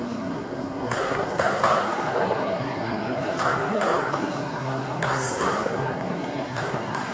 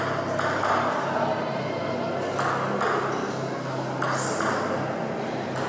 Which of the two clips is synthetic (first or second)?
first